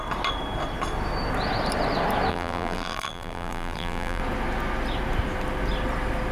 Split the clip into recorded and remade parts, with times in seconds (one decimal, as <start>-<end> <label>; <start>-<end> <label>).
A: 0.0-2.3 recorded; 2.3-4.2 remade; 4.2-6.3 recorded